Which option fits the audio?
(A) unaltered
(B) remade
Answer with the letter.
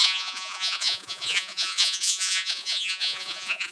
B